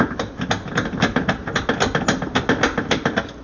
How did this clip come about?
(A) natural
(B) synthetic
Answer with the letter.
A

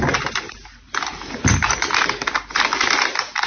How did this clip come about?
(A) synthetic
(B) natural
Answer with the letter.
B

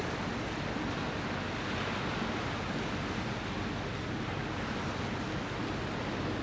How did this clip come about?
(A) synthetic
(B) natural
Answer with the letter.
B